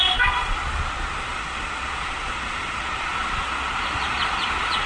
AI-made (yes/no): yes